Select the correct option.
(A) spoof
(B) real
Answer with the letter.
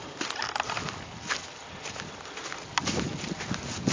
B